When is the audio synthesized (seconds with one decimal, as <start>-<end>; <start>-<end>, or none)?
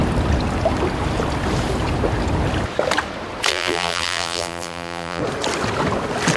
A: 3.5-5.2